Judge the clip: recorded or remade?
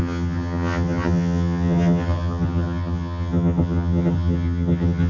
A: remade